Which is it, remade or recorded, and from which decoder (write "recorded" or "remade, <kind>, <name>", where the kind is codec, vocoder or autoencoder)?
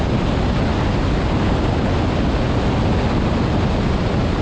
recorded